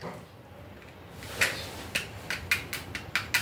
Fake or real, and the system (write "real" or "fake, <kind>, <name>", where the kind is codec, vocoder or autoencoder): real